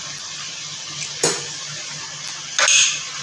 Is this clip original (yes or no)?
yes